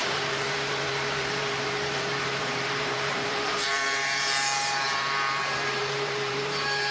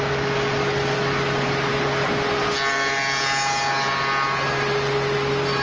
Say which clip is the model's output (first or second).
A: first